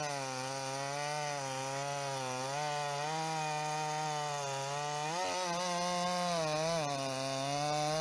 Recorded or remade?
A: recorded